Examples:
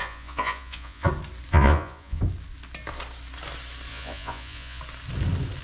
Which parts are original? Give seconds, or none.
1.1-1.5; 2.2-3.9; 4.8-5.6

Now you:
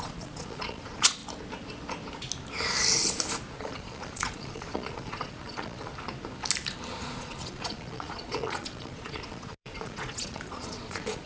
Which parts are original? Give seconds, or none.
1.2-3.5; 5.9-6.9

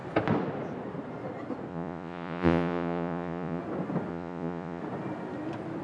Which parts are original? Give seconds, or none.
0.0-1.7; 3.6-4.1; 4.8-5.8

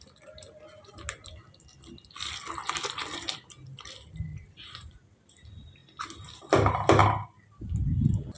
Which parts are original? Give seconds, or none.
0.0-4.3; 5.2-8.4